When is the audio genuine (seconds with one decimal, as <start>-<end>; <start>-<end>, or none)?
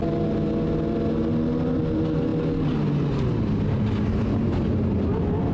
0.0-5.5